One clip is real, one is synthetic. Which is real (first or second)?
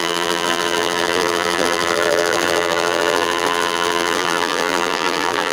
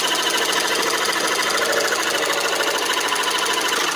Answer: second